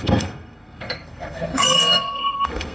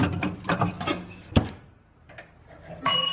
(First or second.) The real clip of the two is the second